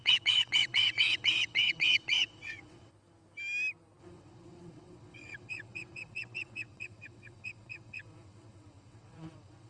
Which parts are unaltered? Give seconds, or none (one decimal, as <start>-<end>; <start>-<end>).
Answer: 2.9-4.0